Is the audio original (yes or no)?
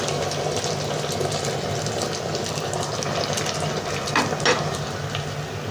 yes